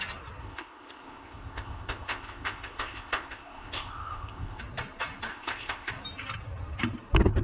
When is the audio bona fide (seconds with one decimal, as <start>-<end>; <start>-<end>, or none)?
0.0-0.4; 4.6-5.3; 5.9-7.4